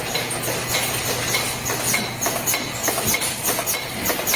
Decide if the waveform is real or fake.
real